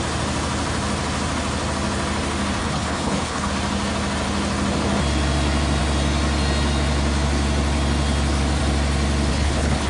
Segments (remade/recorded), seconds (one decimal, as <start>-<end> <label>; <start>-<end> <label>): 0.0-2.6 recorded; 2.6-3.5 remade; 3.5-9.3 recorded; 9.3-9.9 remade